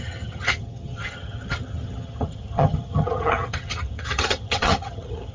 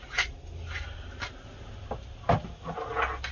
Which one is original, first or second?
second